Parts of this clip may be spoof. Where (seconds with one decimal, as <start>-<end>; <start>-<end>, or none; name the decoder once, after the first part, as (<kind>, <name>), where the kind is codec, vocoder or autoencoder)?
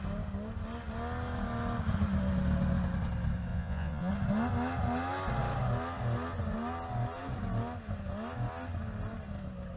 3.5-4.1 (vocoder, Vocos)